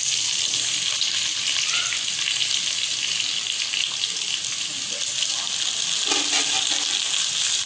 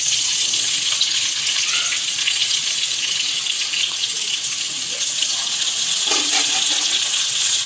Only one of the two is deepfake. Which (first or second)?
second